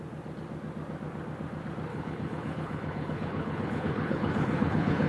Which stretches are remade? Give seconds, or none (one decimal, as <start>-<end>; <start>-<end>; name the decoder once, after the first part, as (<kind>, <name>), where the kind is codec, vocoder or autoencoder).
1.9-5.1 (codec, HILCodec)